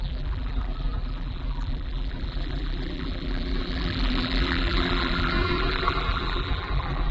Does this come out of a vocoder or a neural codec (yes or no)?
yes